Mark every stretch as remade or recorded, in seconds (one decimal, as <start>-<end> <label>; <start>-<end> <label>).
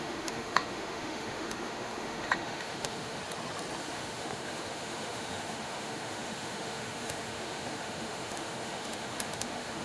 0.0-3.2 remade; 3.2-3.8 recorded; 3.8-9.8 remade